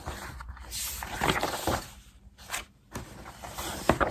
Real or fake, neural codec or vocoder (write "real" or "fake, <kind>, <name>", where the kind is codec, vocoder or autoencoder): fake, vocoder, BigVGAN v2